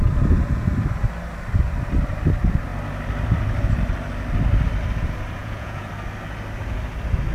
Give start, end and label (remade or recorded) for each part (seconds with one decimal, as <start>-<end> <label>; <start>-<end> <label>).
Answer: 0.0-5.4 recorded; 5.4-5.9 remade; 5.9-7.3 recorded